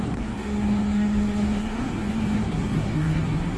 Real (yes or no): no